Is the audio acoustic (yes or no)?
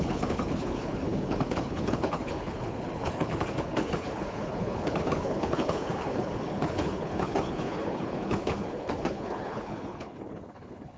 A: no